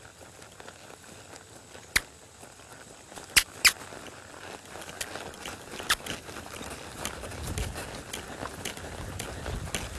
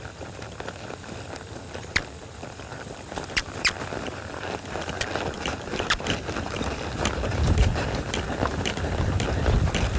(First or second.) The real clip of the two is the first